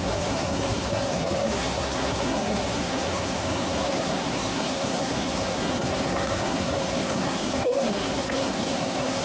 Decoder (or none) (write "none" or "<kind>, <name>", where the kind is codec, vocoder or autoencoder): codec, SNAC